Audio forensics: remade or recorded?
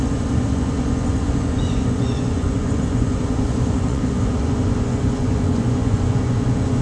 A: remade